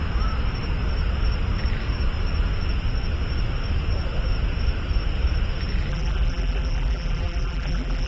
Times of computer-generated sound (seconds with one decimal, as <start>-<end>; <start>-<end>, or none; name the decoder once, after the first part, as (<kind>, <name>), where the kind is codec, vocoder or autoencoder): 5.9-8.1 (vocoder, BigVGAN v2)